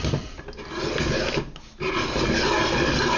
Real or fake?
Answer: real